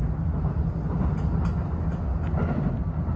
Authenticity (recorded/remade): recorded